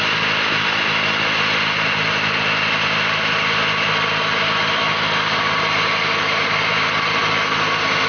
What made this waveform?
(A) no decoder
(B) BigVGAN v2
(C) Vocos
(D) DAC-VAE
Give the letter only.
A